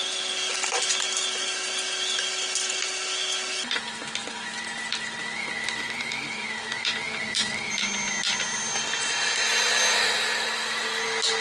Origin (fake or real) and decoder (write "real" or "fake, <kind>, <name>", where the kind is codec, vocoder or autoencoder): real